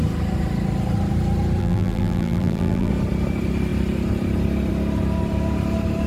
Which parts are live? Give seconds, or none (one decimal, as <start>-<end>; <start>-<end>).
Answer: 0.0-1.6; 2.9-6.1